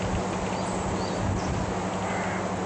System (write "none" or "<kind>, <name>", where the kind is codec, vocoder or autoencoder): none